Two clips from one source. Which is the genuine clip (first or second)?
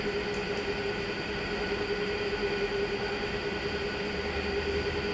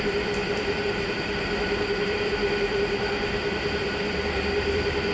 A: first